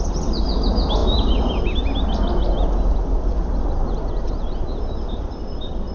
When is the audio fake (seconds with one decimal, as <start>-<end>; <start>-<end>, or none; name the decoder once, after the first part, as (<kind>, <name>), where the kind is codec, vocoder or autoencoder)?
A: 1.0-1.8 (vocoder, BigVGAN v2); 3.3-5.9